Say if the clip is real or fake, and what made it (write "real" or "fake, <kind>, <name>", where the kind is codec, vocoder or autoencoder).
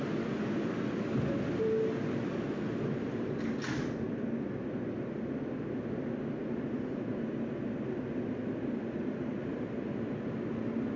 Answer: real